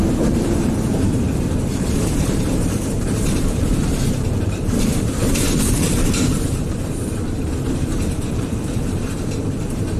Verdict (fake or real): fake